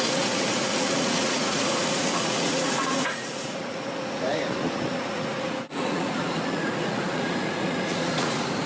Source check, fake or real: fake